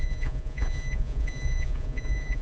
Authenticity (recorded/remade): remade